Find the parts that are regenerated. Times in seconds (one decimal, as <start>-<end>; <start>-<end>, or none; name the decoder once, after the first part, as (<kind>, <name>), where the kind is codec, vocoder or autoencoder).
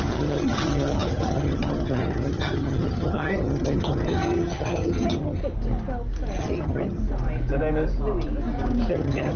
0.0-5.4 (vocoder, HiFi-GAN); 6.4-7.0; 8.9-9.4